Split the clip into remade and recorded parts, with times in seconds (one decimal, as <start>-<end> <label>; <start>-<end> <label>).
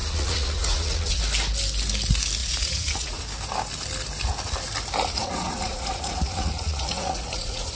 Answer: 0.0-1.2 remade; 1.2-2.4 recorded; 2.4-3.2 remade; 3.2-5.2 recorded; 5.2-7.7 remade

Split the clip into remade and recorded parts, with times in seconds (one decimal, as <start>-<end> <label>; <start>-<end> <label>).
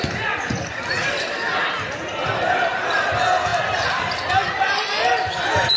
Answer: 0.0-5.8 recorded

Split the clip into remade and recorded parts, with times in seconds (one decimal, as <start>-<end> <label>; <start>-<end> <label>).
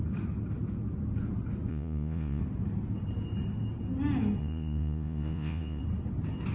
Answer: 0.0-1.7 recorded; 1.7-2.4 remade; 2.4-4.4 recorded; 4.4-5.8 remade; 5.8-6.5 recorded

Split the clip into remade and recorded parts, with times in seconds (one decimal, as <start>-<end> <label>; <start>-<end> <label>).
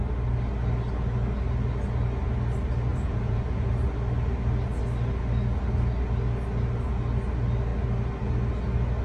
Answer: 0.0-2.9 recorded; 2.9-3.7 remade; 3.7-9.0 recorded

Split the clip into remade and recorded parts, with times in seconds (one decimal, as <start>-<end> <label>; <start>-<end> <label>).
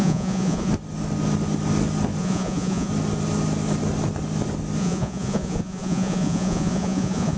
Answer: 0.0-0.7 remade; 0.7-2.2 recorded; 2.2-2.9 remade; 2.9-4.8 recorded; 4.8-7.4 remade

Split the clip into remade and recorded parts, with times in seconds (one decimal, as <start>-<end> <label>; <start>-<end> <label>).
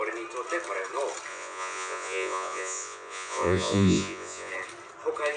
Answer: 0.0-1.3 recorded; 1.3-4.5 remade; 4.5-5.4 recorded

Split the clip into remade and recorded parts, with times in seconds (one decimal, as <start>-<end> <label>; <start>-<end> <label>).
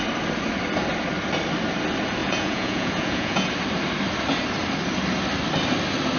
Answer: 0.0-2.2 recorded; 2.2-3.5 remade; 3.5-6.2 recorded